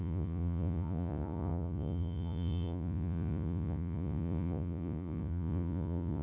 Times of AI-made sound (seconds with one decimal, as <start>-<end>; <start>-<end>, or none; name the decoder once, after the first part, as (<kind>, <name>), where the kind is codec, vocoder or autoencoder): 0.0-6.2 (vocoder, Vocos)

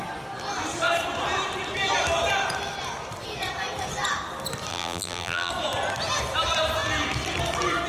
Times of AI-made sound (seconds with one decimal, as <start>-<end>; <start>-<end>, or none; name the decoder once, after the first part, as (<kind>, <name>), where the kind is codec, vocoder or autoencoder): 4.7-5.5 (vocoder, BigVGAN v2)

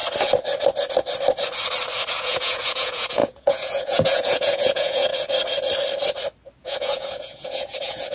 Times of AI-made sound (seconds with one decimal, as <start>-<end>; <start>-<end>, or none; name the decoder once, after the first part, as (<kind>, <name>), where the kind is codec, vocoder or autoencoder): 2.1-5.1 (vocoder, Vocos); 6.6-8.1

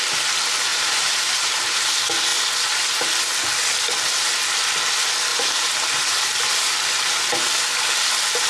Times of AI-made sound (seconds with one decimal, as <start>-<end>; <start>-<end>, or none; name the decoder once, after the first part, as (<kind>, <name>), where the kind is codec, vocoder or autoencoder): 0.7-1.9 (vocoder, BigVGAN v2); 5.3-7.1

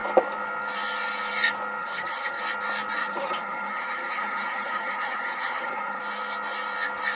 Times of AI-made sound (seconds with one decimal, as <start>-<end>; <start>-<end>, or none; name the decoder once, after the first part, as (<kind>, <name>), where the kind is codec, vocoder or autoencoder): 1.8-2.4 (vocoder, HiFi-GAN); 3.0-6.0

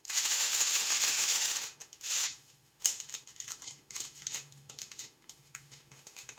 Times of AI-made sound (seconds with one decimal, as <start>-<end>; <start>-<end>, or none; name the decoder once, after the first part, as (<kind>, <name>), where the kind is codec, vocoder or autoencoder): 0.0-6.4 (autoencoder, DAC-VAE)